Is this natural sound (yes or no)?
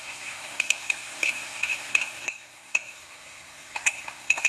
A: no